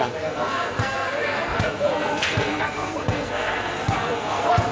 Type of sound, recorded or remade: remade